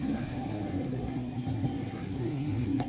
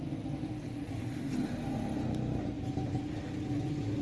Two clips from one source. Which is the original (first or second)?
second